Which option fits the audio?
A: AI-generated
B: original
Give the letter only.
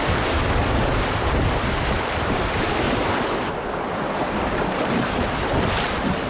B